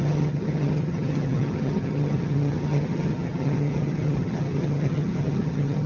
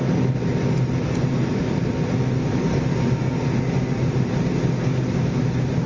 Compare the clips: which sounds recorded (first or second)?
second